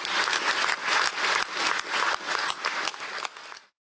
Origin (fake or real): real